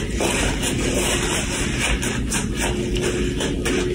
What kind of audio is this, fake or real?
real